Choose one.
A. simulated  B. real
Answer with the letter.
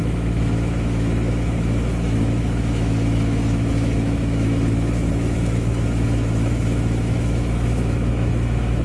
A